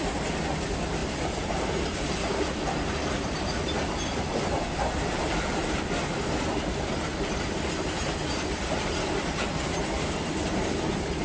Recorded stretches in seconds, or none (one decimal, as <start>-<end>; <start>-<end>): 0.0-11.2